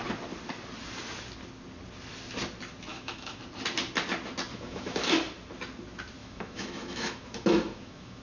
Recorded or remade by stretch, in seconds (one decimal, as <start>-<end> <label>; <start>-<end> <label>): 0.0-2.9 recorded; 2.9-3.4 remade; 3.4-4.5 recorded; 4.5-5.1 remade; 5.1-6.2 recorded; 6.2-8.2 remade